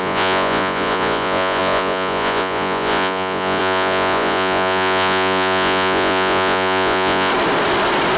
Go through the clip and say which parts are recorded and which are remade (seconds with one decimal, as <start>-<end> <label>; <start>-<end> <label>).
0.0-7.3 remade; 7.3-8.2 recorded